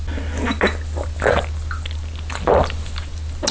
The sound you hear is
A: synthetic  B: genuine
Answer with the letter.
B